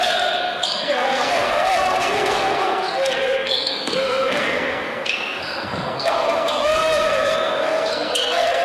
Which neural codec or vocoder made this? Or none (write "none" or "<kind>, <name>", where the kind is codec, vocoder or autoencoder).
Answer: codec, SNAC